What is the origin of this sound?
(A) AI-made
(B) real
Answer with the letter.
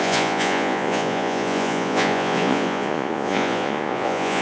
A